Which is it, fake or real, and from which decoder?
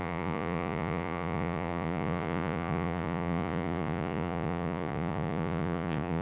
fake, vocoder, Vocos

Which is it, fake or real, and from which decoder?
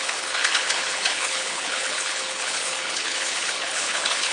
fake, codec, HILCodec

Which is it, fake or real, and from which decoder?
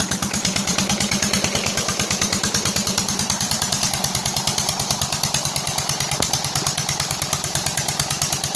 fake, vocoder, BigVGAN v2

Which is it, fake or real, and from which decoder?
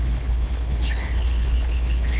fake, codec, HILCodec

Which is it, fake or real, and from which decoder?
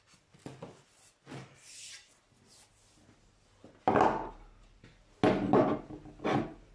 real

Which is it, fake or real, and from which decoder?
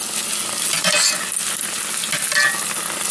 real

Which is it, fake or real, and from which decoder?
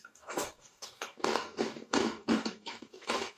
fake, codec, DAC